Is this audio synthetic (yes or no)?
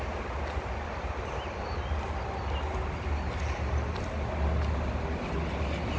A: no